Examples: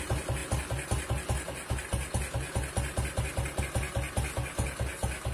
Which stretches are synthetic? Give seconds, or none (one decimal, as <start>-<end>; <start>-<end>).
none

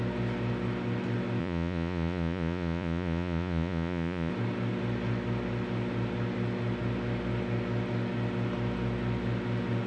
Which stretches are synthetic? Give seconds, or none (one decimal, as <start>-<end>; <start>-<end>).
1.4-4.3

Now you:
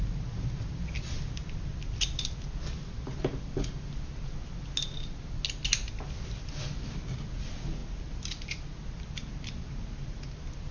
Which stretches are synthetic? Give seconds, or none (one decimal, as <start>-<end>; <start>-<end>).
none

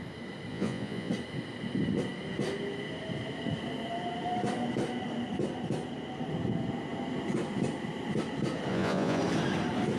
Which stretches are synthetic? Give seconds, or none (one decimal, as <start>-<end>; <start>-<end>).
0.5-1.1; 8.7-9.2

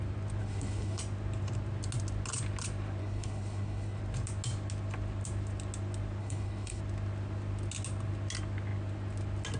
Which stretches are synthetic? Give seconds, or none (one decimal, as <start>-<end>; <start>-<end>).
0.4-1.0; 3.0-4.0; 6.2-6.8